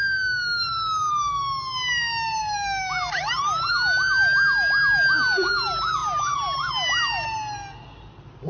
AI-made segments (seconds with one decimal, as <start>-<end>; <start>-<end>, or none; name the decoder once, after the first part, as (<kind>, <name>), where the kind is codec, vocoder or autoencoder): 6.0-6.7 (vocoder, BigVGAN v2)